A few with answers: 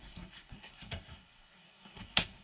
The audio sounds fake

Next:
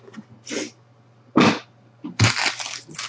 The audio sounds real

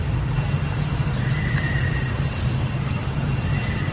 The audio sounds real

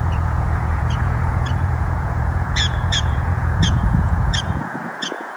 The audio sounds fake